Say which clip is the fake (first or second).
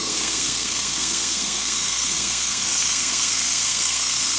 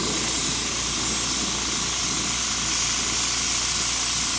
first